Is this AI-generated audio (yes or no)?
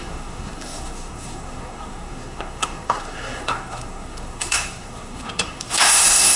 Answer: yes